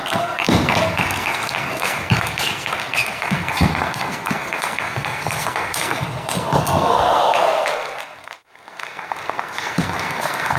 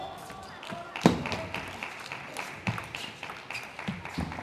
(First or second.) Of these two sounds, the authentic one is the second